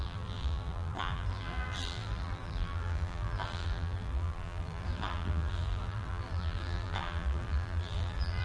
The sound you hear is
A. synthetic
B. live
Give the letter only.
A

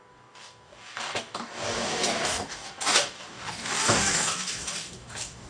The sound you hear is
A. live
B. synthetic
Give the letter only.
B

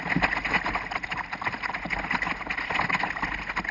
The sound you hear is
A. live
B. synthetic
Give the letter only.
A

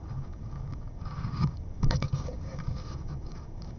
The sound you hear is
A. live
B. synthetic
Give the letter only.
B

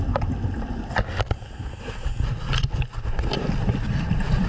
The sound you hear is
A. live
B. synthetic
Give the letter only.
A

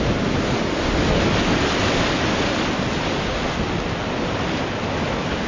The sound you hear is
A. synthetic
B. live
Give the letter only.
B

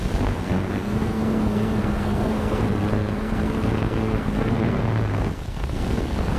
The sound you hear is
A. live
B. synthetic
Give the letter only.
B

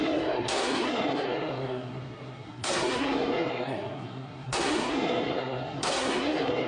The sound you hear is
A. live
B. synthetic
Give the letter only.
B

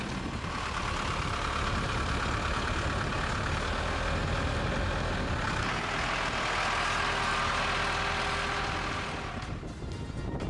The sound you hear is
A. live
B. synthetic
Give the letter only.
A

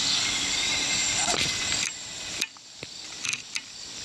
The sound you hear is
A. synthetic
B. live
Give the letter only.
B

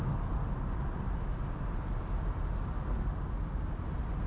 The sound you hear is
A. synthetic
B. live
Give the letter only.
B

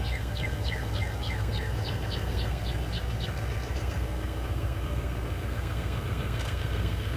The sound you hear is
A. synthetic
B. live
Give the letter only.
A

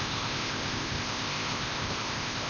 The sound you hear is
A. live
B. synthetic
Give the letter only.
B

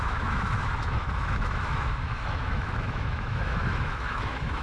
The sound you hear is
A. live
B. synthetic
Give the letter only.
B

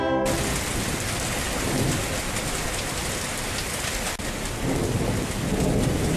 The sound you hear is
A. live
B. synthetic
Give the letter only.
A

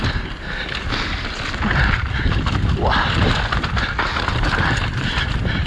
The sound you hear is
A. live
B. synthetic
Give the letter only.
B